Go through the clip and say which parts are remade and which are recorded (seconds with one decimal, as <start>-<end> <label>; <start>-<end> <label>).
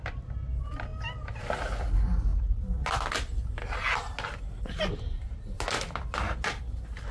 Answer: 0.0-7.1 recorded